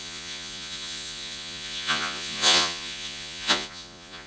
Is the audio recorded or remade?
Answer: remade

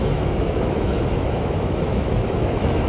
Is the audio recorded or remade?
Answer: remade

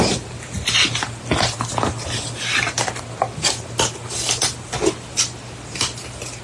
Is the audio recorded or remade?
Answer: recorded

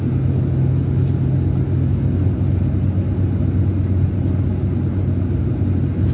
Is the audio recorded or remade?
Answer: recorded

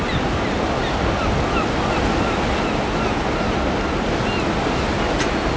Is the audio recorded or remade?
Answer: recorded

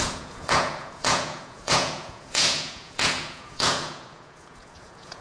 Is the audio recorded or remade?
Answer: remade